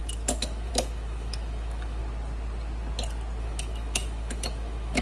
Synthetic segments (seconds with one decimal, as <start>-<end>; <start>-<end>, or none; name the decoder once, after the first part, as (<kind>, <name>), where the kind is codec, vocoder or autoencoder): 0.0-2.0 (autoencoder, DAC-VAE); 3.4-5.0